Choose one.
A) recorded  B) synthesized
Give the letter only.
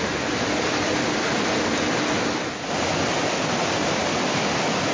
A